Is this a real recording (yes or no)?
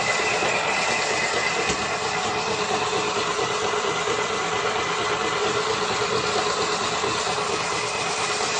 yes